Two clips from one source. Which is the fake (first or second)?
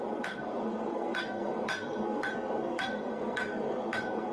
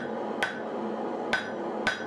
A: first